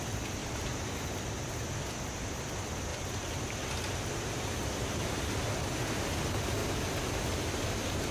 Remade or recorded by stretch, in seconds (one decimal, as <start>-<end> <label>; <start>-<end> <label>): 0.0-8.1 recorded